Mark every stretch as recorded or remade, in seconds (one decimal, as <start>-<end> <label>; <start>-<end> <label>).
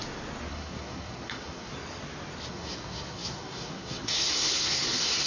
0.0-0.5 recorded; 0.5-1.7 remade; 1.7-2.5 recorded; 2.5-5.3 remade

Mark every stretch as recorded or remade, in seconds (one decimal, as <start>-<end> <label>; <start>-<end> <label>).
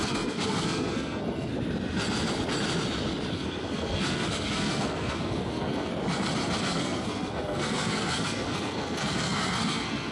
0.0-1.5 remade; 1.5-3.3 recorded; 3.3-5.9 remade; 5.9-6.6 recorded; 6.6-10.1 remade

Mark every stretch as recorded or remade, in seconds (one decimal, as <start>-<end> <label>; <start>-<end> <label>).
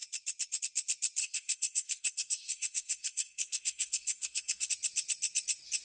0.0-1.2 recorded; 1.2-4.7 remade; 4.7-5.8 recorded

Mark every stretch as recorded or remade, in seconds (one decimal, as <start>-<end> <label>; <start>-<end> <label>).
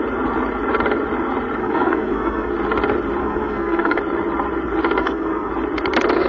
0.0-1.6 recorded; 1.6-2.5 remade; 2.5-3.2 recorded; 3.2-4.0 remade; 4.0-5.0 recorded; 5.0-5.5 remade; 5.5-6.3 recorded